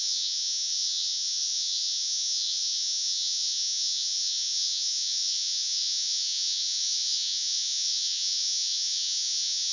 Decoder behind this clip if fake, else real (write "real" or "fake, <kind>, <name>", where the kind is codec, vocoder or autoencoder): fake, vocoder, Vocos